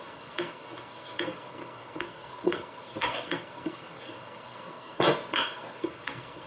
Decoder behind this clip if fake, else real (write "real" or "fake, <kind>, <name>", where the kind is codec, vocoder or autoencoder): fake, codec, SNAC